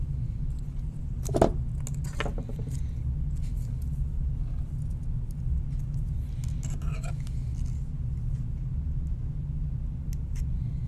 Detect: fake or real real